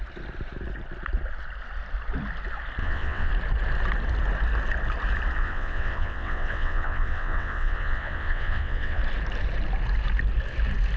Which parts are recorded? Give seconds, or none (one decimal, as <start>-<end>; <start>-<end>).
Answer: 0.0-2.8; 3.3-5.4; 9.0-11.0